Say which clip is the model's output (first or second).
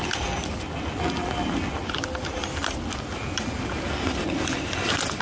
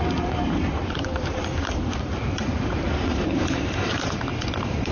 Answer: second